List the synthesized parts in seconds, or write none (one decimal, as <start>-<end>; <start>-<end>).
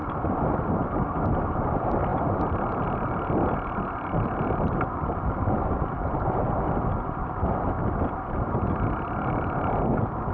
none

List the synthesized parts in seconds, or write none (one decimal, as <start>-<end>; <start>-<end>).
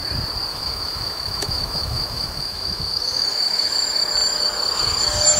0.5-3.7